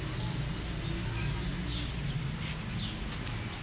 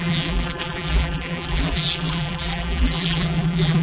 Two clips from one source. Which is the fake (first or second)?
second